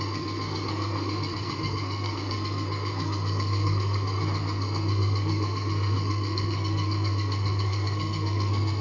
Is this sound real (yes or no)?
no